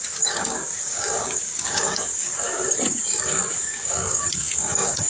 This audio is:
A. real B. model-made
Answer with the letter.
B